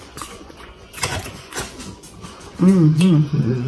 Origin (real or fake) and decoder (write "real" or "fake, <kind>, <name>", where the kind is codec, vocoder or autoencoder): fake, vocoder, Vocos